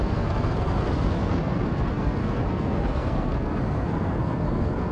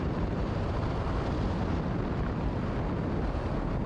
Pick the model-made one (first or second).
first